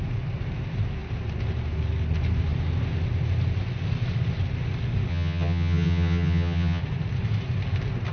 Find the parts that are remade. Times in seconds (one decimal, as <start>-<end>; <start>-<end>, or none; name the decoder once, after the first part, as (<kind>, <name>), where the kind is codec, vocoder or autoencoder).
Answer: 5.1-6.8 (vocoder, HiFi-GAN)